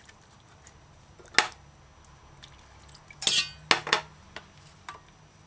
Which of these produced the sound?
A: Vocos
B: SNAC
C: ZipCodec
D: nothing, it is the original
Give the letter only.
D